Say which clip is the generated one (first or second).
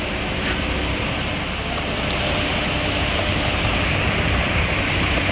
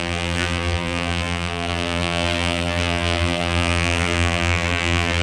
second